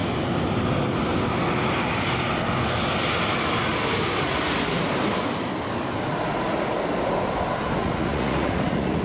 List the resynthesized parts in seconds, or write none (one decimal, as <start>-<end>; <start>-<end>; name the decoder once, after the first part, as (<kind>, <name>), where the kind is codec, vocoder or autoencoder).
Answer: 7.8-9.0 (vocoder, Vocos)